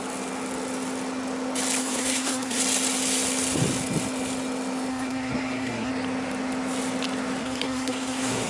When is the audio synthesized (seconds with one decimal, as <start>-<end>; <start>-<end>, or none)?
1.8-2.6; 4.9-5.9; 7.4-8.5